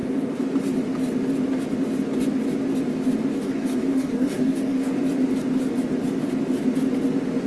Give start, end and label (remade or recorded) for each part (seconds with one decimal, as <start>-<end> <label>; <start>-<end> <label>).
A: 0.0-3.3 recorded; 3.3-5.0 remade; 5.0-7.5 recorded

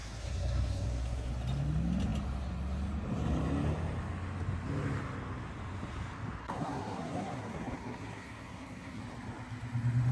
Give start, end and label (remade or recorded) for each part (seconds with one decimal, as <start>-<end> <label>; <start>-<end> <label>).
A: 0.0-1.3 remade; 1.3-6.4 recorded; 6.4-9.0 remade; 9.0-10.1 recorded

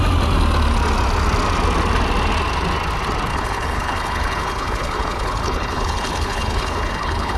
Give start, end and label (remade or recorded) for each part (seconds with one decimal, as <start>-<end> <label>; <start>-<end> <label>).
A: 0.0-3.3 recorded; 3.3-7.4 remade

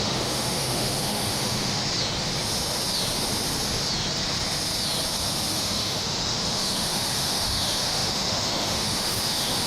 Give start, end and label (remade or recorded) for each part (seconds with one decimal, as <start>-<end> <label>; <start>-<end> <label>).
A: 0.0-1.8 remade; 1.8-5.5 recorded; 5.5-9.7 remade

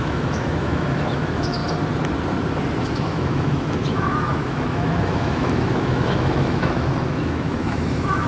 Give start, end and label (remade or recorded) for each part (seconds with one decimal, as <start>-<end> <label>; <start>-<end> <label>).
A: 0.0-1.6 remade; 1.6-2.8 recorded; 2.8-8.3 remade

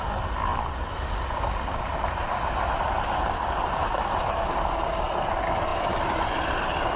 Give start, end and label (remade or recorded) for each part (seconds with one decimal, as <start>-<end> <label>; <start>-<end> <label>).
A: 0.0-0.5 recorded; 0.5-2.0 remade; 2.0-3.6 recorded; 3.6-4.2 remade; 4.2-5.7 recorded; 5.7-6.5 remade; 6.5-7.0 recorded

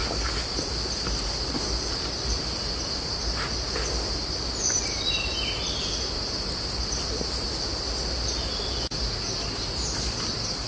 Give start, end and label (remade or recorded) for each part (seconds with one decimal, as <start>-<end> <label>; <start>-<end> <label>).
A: 0.0-10.7 recorded